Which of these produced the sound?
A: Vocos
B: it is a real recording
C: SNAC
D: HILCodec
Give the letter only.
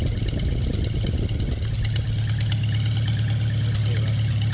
B